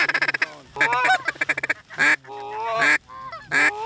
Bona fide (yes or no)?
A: yes